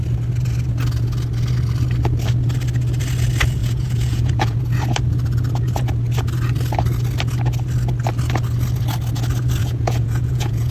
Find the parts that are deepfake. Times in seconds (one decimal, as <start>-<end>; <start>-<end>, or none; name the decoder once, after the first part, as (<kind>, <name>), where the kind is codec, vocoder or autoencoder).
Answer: 3.6-4.6 (vocoder, Vocos); 9.6-10.7